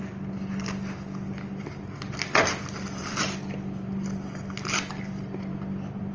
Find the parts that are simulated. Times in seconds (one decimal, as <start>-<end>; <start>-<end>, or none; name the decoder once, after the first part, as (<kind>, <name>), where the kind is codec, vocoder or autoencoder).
none